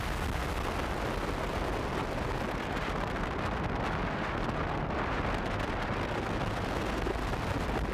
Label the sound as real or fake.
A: real